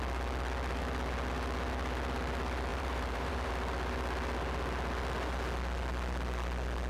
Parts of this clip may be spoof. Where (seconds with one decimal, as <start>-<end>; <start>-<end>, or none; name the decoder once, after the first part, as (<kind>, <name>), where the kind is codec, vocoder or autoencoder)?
2.7-3.5 (vocoder, BigVGAN v2)